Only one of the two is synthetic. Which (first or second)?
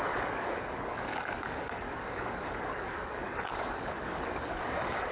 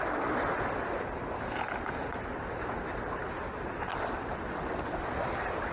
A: first